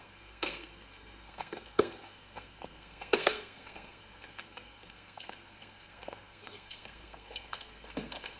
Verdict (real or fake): fake